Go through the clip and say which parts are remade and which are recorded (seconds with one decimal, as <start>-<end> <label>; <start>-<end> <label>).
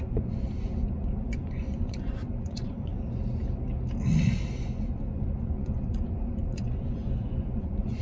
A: 0.0-2.9 remade; 2.9-4.5 recorded; 4.5-8.0 remade